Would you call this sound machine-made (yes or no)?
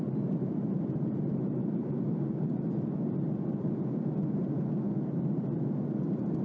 no